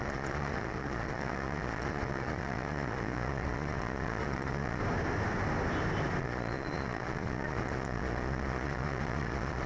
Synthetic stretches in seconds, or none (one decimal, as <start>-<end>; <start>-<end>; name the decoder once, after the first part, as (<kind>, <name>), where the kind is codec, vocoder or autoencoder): 0.0-4.8 (vocoder, Vocos); 6.2-9.7